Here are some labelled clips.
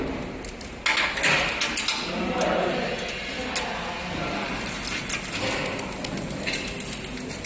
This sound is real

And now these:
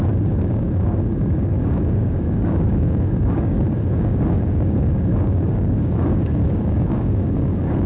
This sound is fake